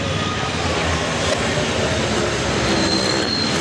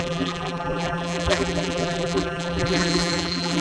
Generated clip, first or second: second